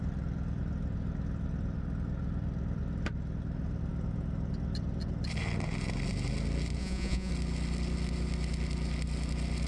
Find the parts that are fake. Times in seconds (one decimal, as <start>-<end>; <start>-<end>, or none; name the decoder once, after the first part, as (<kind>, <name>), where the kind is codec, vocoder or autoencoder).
6.8-7.3 (vocoder, Vocos)